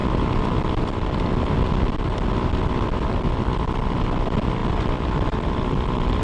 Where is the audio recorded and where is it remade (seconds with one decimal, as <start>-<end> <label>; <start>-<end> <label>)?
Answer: 0.0-6.2 recorded